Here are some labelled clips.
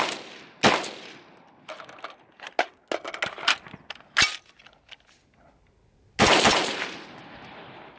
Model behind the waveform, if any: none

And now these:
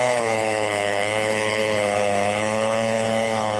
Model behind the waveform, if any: codec, HILCodec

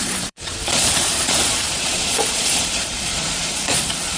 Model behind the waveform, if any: vocoder, Vocos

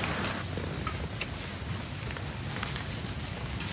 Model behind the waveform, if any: none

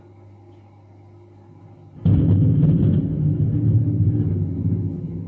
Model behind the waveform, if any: none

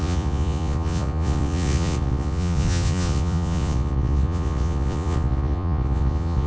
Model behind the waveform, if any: vocoder, Vocos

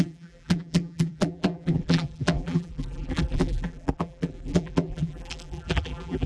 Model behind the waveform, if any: vocoder, BigVGAN v2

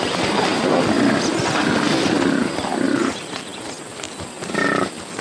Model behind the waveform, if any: none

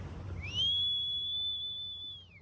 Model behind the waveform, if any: none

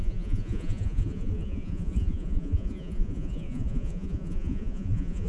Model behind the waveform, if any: vocoder, Vocos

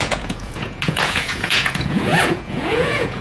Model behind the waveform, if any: vocoder, Vocos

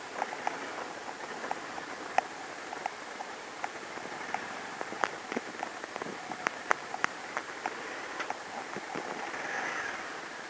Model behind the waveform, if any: none